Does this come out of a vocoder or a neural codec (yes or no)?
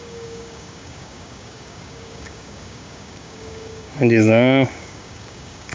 yes